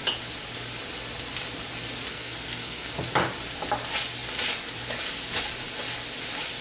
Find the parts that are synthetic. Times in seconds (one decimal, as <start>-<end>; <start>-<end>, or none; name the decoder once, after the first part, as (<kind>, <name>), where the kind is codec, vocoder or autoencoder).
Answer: 2.1-2.9 (codec, SNAC)